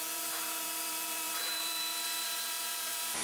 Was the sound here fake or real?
fake